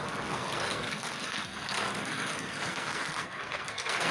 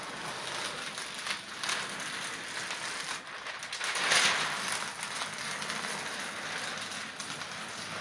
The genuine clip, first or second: second